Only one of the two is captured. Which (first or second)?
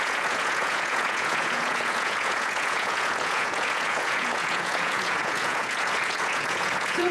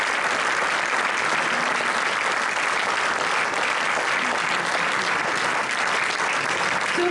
second